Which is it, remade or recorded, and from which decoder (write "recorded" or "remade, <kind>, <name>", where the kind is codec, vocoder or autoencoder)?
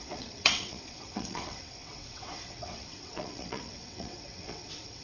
remade, vocoder, WaveNeXt